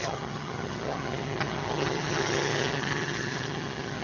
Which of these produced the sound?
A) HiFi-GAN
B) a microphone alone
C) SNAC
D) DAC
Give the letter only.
A